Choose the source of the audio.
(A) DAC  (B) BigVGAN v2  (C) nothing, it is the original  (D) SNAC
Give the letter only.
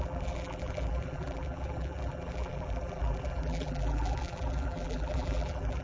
B